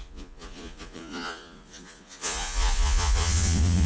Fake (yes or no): yes